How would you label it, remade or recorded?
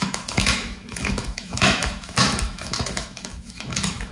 remade